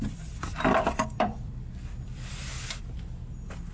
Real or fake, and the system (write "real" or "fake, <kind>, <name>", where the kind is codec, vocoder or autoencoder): fake, vocoder, BigVGAN v2